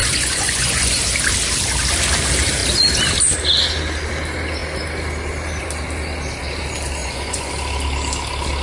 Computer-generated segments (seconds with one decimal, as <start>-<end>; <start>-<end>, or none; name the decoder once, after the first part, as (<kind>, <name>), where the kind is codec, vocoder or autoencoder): 0.0-1.0 (vocoder, Vocos); 7.0-7.5